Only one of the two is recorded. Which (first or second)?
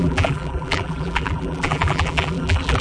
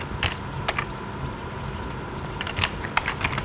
second